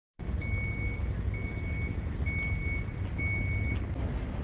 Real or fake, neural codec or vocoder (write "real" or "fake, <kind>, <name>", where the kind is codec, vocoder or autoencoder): real